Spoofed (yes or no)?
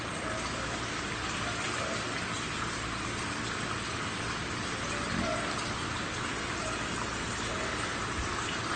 no